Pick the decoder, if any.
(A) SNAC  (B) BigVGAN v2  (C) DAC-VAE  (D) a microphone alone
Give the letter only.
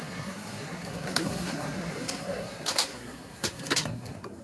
A